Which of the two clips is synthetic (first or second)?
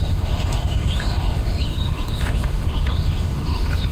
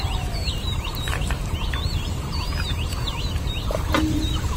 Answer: first